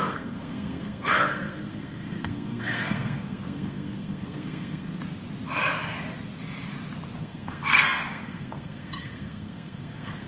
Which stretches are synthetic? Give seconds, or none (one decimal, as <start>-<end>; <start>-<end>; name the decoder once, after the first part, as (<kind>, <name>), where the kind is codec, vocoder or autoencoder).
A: 0.0-5.0 (codec, SNAC); 7.2-10.3